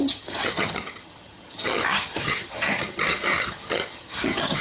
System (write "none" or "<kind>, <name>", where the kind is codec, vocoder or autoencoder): vocoder, HiFi-GAN